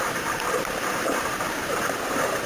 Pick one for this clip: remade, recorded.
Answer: remade